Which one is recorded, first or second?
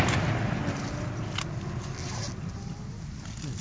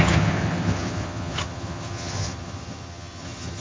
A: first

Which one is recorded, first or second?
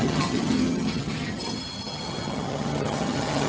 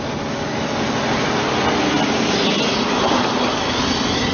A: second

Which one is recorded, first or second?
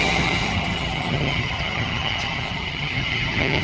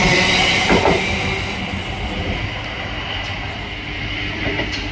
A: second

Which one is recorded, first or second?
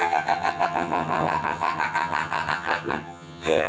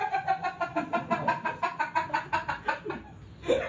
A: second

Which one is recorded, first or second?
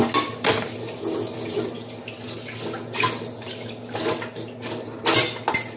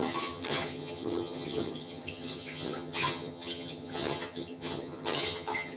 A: first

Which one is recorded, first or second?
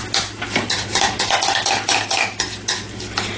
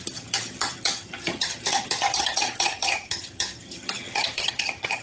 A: first